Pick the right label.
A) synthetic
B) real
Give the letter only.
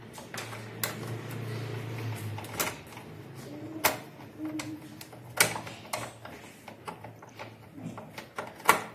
B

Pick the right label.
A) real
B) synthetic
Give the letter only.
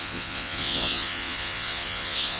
B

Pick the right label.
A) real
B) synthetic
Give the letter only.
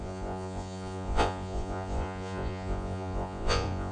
B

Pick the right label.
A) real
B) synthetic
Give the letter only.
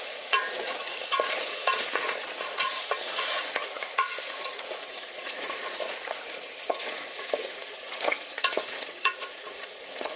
B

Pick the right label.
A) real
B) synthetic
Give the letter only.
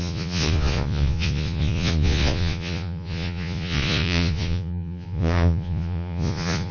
B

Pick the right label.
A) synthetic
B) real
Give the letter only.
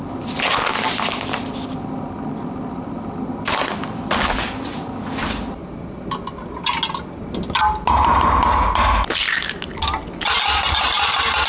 B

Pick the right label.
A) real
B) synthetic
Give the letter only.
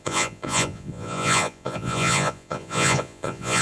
B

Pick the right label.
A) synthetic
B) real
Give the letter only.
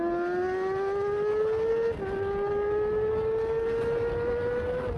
B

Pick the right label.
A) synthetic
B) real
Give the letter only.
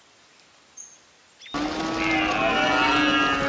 B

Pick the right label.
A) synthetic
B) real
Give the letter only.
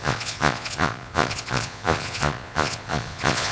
A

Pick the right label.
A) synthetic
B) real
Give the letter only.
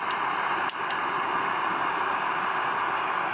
B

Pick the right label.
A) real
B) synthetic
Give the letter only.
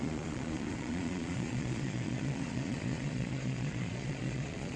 B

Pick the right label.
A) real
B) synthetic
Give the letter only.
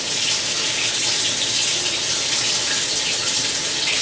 A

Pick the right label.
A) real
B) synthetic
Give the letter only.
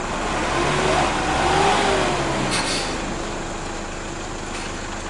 A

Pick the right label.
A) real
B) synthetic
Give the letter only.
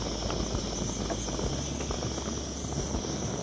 A